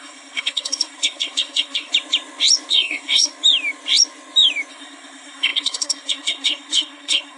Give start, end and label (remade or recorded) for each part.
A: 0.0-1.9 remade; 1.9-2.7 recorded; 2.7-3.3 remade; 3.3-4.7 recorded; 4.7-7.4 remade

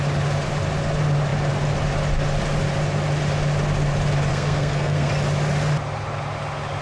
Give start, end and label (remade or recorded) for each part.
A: 0.0-4.3 recorded; 4.3-5.1 remade; 5.1-6.8 recorded

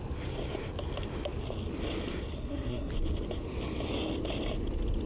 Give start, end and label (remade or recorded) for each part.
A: 0.0-2.3 recorded; 2.3-2.9 remade; 2.9-5.1 recorded